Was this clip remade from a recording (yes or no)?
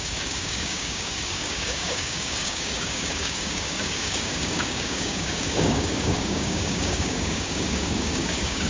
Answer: yes